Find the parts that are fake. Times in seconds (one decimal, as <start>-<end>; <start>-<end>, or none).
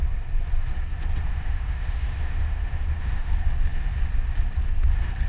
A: 1.3-3.3